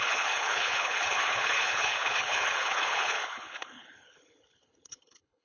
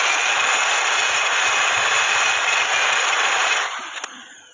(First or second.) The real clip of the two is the second